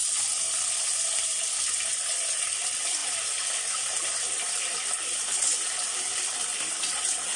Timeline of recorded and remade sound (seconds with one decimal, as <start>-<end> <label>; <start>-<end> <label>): 0.0-7.4 recorded